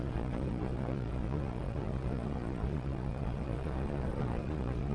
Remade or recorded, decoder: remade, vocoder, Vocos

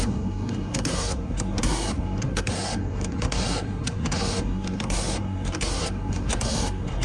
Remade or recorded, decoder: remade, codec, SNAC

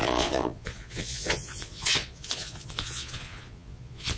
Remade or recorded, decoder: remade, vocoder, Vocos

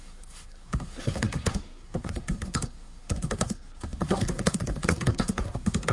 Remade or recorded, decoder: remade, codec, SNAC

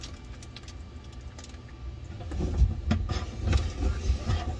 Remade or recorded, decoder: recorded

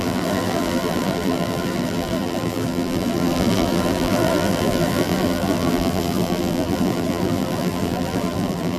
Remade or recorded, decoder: remade, vocoder, BigVGAN v2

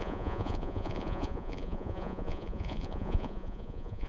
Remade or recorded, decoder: remade, vocoder, Vocos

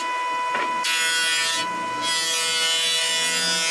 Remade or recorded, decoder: recorded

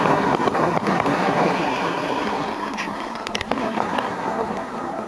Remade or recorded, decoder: remade, codec, SNAC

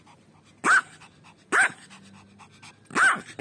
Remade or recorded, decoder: recorded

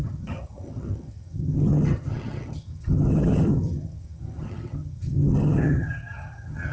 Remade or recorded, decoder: remade, vocoder, HiFi-GAN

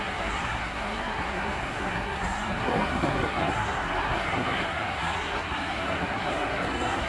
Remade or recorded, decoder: remade, codec, SNAC